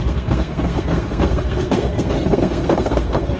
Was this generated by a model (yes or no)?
yes